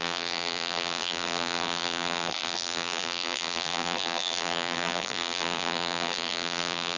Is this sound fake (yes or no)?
yes